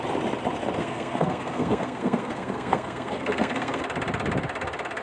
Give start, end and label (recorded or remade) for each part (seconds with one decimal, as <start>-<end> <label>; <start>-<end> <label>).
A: 0.0-0.8 recorded; 0.8-3.8 remade; 3.8-5.0 recorded